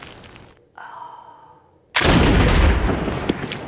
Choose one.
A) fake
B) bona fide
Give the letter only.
B